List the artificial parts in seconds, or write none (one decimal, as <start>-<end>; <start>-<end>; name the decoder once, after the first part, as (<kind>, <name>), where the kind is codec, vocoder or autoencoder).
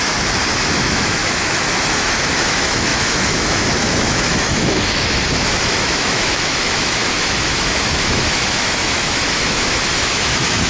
0.0-10.7 (autoencoder, DAC-VAE)